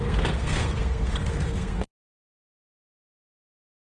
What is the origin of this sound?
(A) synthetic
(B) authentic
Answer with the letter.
A